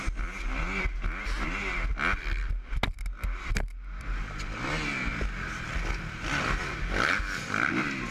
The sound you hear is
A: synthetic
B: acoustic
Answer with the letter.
B